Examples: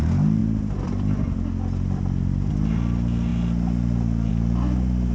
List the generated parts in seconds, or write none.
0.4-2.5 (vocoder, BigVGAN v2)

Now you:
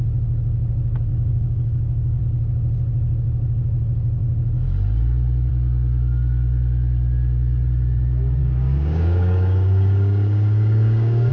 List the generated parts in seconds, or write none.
1.1-2.2 (codec, DAC); 8.4-11.3

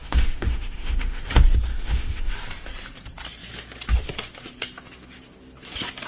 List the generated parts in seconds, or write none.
0.0-1.2 (autoencoder, DAC-VAE); 1.7-2.3

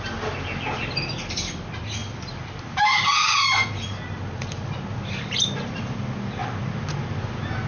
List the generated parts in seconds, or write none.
2.0-3.0 (vocoder, BigVGAN v2)

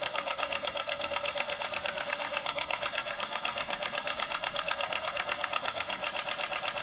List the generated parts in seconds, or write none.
0.0-6.0 (codec, SNAC)